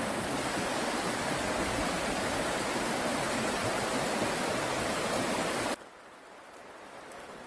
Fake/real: real